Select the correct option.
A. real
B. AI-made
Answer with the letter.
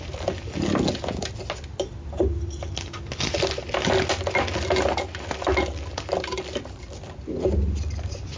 A